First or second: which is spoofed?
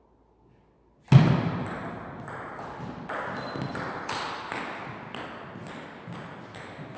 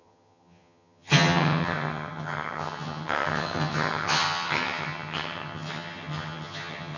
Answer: second